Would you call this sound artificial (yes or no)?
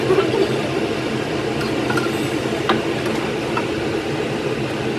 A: no